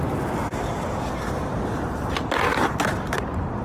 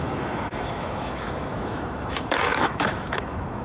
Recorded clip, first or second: first